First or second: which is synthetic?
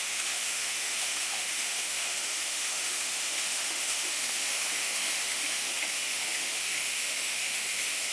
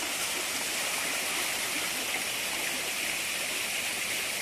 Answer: first